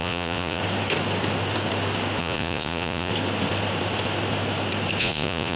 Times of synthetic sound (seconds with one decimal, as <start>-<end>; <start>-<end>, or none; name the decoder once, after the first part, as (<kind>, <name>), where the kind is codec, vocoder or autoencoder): 0.0-0.6 (vocoder, Vocos); 2.2-3.1; 5.0-5.6